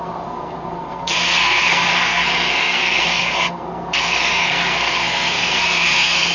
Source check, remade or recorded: remade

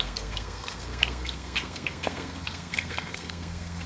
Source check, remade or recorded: remade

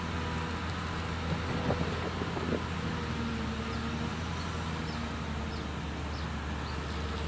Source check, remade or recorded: recorded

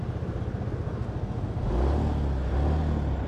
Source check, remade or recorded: recorded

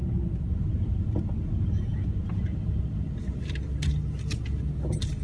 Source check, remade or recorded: recorded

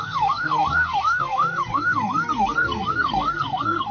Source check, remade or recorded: remade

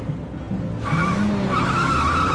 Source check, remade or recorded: recorded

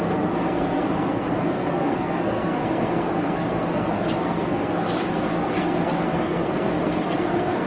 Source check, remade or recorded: remade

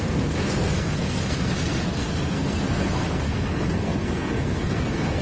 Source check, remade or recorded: remade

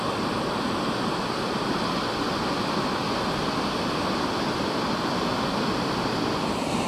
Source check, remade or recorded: recorded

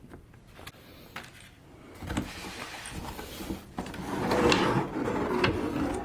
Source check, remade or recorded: recorded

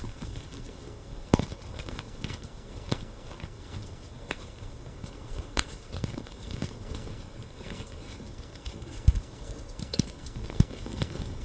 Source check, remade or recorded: remade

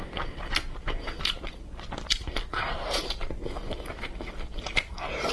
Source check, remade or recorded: recorded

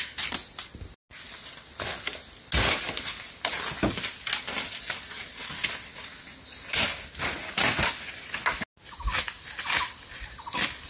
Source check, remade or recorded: recorded